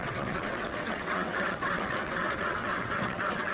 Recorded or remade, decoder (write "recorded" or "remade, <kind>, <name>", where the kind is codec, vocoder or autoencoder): remade, vocoder, WaveNeXt